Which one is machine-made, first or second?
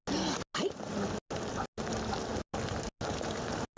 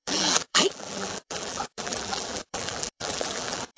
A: second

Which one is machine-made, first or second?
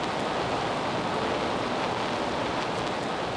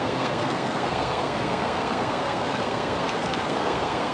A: second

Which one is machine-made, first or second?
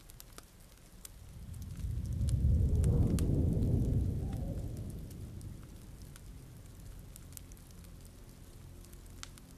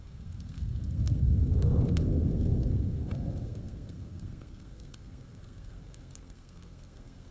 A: second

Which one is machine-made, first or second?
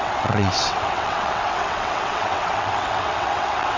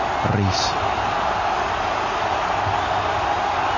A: first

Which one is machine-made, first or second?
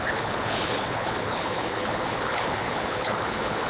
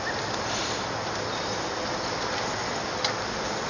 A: first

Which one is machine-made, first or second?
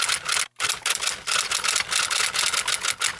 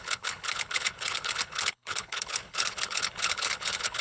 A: second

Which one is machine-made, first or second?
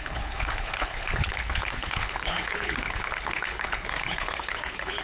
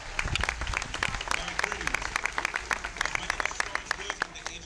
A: first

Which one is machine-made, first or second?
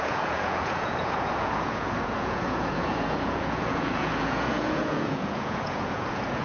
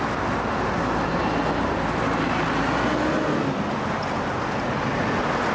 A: first